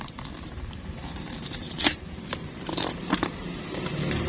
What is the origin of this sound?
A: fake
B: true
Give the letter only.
A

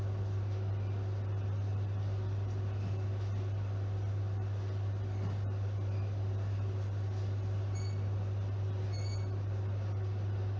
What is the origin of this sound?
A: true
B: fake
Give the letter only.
A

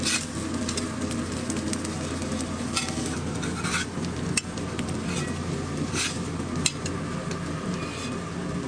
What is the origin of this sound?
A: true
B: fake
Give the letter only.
A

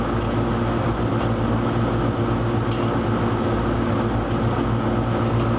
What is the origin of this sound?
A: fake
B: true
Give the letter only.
B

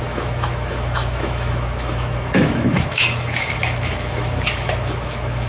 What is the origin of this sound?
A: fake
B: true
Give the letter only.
A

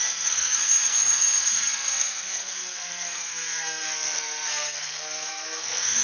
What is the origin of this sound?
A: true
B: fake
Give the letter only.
B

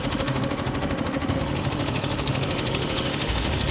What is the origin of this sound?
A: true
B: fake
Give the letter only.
B